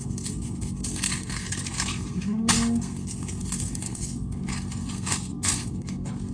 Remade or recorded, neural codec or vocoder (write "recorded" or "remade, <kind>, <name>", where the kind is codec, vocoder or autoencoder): remade, codec, SNAC